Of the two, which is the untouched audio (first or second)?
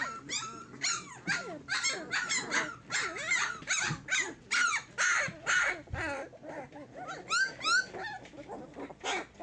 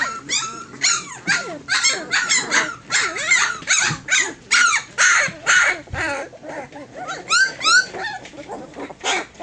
first